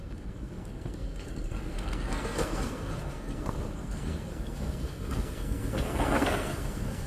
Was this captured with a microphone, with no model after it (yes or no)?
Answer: no